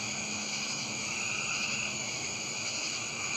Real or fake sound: fake